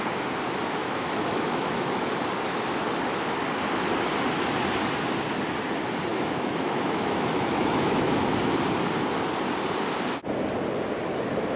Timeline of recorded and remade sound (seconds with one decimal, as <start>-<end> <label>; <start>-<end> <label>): 0.0-0.8 recorded; 0.8-2.1 remade; 2.1-6.1 recorded; 6.1-8.1 remade; 8.1-11.6 recorded